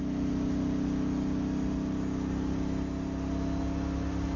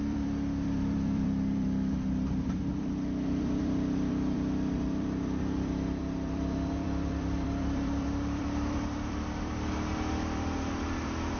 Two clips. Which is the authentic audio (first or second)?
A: first